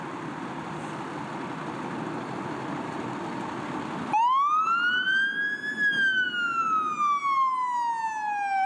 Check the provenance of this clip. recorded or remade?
recorded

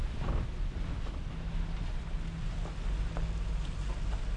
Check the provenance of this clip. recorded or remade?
recorded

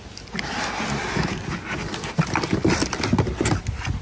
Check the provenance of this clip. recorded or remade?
recorded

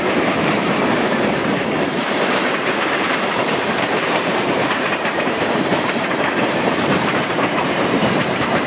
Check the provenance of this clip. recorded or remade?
remade